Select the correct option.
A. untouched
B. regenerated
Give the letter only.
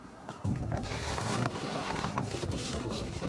B